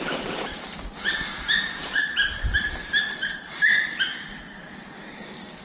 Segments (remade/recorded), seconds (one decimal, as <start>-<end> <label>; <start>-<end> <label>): 0.0-5.6 recorded